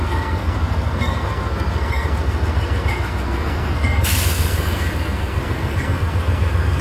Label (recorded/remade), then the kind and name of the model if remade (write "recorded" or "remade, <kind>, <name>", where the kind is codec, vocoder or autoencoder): remade, codec, SNAC